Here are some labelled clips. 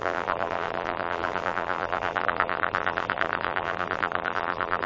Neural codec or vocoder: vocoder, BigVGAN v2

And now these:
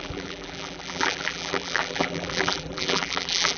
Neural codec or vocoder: vocoder, BigVGAN v2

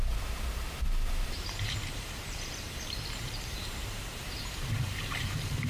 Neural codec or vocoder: vocoder, BigVGAN v2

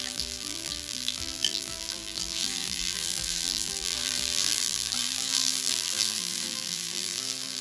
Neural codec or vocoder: vocoder, BigVGAN v2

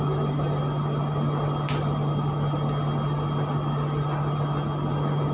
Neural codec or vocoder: none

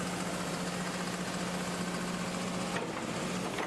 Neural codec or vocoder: none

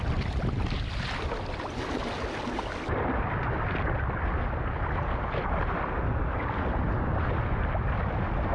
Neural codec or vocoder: none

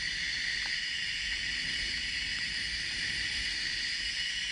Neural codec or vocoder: vocoder, BigVGAN v2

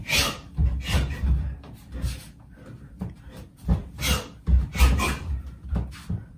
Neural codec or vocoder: none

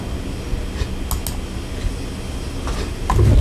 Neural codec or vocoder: none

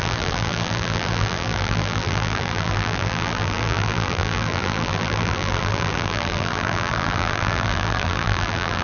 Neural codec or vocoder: vocoder, BigVGAN v2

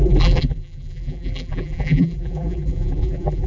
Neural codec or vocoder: vocoder, BigVGAN v2